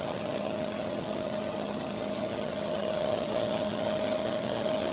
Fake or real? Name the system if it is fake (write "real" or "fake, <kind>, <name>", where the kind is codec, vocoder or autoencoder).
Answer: fake, vocoder, HiFi-GAN